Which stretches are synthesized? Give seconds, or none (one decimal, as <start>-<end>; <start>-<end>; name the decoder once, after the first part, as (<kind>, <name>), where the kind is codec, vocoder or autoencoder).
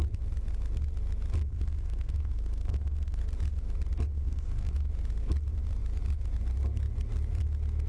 1.4-3.2 (codec, SNAC); 4.1-4.9